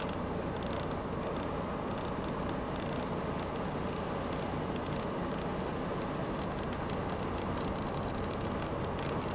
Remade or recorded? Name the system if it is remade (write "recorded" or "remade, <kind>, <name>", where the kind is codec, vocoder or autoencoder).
recorded